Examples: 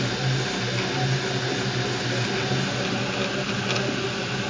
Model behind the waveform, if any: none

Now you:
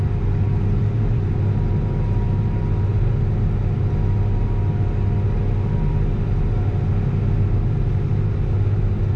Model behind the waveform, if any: none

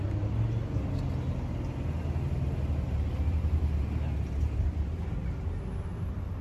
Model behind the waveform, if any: none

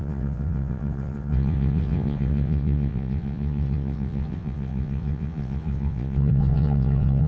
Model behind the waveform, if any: vocoder, WaveNeXt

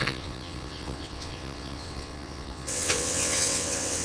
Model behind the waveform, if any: vocoder, WaveNeXt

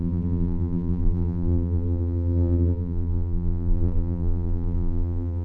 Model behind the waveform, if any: vocoder, BigVGAN v2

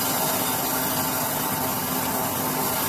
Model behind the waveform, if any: none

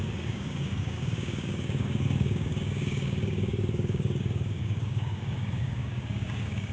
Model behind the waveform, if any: codec, DAC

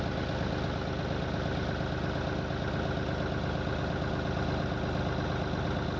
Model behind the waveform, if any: none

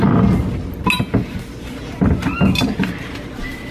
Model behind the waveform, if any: none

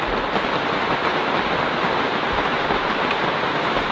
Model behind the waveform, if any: none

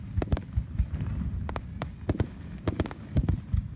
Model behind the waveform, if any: none